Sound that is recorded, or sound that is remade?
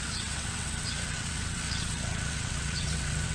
remade